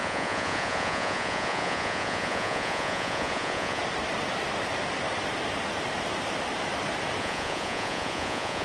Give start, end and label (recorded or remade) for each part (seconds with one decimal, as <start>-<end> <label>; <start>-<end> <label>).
0.0-3.8 remade; 3.8-7.2 recorded; 7.2-8.6 remade